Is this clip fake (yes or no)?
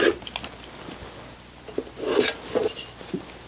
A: no